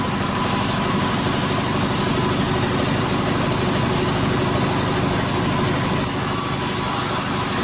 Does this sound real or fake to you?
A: real